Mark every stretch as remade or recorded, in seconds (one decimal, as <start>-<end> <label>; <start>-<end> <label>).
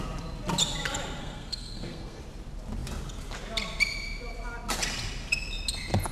0.0-1.2 recorded; 1.2-2.2 remade; 2.2-6.1 recorded